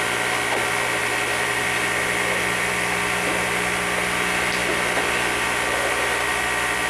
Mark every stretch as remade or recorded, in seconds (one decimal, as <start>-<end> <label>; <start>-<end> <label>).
0.0-6.9 recorded

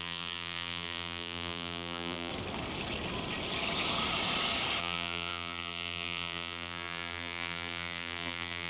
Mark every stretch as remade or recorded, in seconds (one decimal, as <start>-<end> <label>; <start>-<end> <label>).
0.0-2.3 remade; 2.3-4.8 recorded; 4.8-8.7 remade

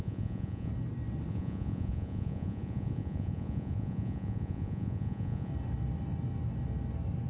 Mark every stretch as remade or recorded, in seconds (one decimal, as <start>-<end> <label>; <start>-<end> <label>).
0.0-0.7 remade; 0.7-1.3 recorded; 1.3-5.5 remade; 5.5-7.3 recorded

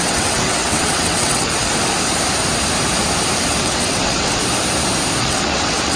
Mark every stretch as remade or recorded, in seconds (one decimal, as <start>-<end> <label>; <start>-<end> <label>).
0.0-1.5 remade; 1.5-3.6 recorded; 3.6-4.4 remade; 4.4-5.2 recorded; 5.2-6.0 remade